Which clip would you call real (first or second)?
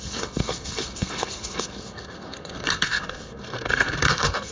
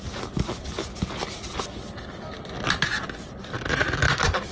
second